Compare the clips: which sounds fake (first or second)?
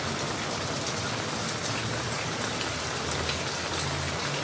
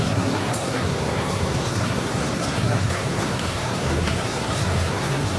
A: second